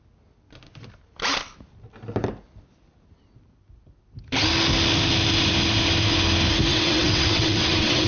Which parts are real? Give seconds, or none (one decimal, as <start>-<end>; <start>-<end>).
0.0-6.7

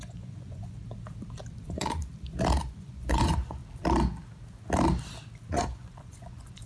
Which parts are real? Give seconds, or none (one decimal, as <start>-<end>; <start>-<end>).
0.8-1.6; 2.0-2.6; 3.6-5.5

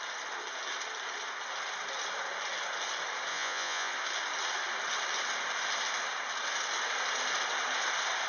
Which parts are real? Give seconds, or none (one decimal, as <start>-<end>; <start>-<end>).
0.0-3.3; 3.9-8.3

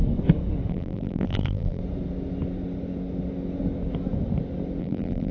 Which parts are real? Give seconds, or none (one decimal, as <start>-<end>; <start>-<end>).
0.0-0.7; 1.8-4.8

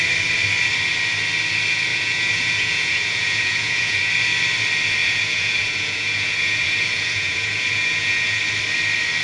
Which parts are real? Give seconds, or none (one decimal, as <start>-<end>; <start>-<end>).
0.0-1.9; 4.1-5.0; 8.4-9.2

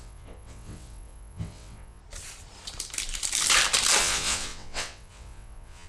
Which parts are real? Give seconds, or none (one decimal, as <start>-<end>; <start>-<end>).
2.0-4.0

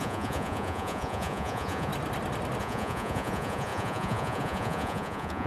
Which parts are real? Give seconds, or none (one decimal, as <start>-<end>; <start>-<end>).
1.9-2.6